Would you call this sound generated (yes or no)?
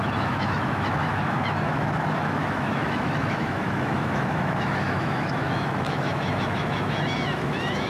yes